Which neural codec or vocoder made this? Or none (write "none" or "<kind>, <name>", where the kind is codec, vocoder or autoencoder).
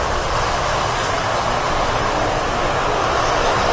none